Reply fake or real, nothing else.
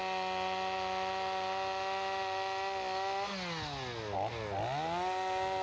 real